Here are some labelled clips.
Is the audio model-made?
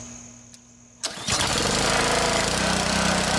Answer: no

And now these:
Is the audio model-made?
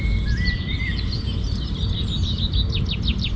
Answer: no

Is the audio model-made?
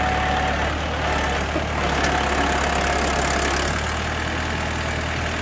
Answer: no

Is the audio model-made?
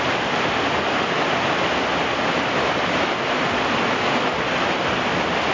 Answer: no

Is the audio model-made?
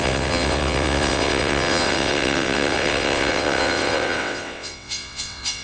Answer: yes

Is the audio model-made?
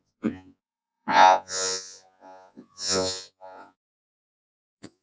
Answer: yes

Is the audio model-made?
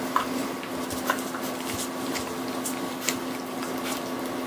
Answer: no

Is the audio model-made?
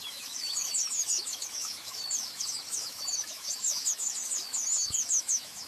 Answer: yes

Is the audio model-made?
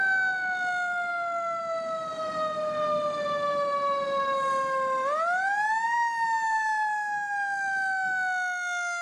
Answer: no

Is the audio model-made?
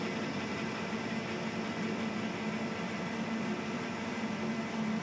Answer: no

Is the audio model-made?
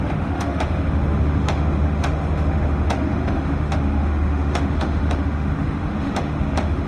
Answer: yes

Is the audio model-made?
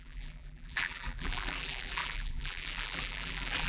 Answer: yes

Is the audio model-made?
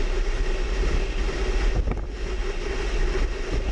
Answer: no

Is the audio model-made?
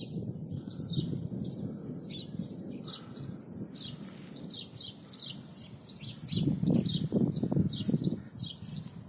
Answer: no